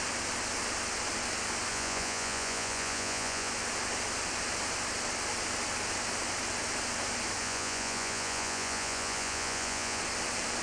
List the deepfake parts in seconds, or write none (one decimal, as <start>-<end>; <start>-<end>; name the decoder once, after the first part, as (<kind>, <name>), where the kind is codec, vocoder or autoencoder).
1.7-3.5 (vocoder, Vocos); 7.4-10.0

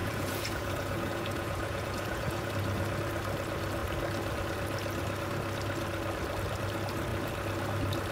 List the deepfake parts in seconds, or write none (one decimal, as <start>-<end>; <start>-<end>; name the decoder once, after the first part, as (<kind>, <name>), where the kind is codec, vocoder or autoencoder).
0.0-2.5 (vocoder, Vocos)

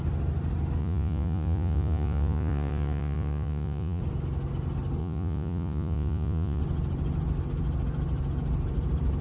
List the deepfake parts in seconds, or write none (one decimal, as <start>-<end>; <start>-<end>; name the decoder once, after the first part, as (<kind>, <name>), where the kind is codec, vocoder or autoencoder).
0.8-4.0 (vocoder, Vocos); 5.0-6.6

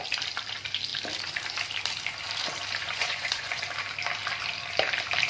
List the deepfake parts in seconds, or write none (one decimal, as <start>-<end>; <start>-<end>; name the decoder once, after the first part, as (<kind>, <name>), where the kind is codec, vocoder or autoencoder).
2.8-3.6 (vocoder, Vocos)

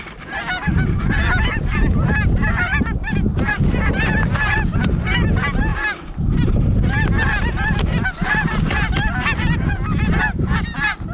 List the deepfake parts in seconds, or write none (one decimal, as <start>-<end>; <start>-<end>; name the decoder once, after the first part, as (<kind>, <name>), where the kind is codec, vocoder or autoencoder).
none

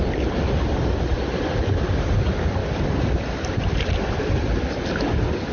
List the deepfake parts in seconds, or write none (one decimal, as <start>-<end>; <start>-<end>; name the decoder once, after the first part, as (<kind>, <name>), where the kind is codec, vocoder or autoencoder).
none